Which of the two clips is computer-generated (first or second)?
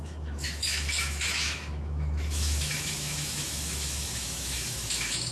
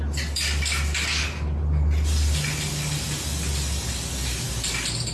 first